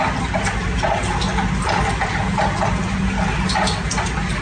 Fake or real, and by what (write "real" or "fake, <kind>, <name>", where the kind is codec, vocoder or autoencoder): real